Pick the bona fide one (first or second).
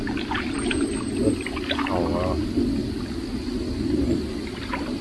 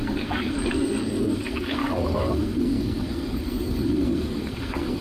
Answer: first